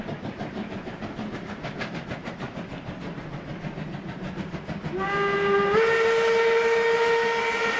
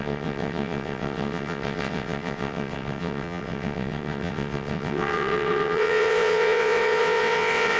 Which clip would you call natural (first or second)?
first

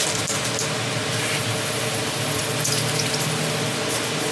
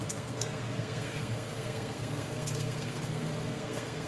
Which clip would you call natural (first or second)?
first